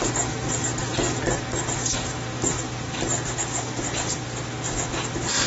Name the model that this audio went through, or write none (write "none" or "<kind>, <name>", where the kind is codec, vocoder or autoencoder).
none